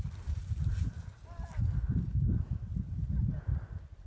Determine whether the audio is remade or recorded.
recorded